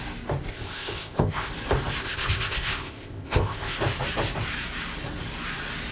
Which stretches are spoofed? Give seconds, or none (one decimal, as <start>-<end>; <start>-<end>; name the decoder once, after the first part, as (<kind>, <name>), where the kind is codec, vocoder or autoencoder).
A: 0.5-1.5 (codec, ZipCodec); 2.0-3.8